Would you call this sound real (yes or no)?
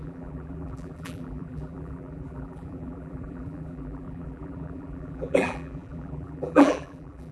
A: no